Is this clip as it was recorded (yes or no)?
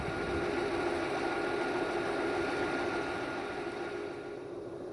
yes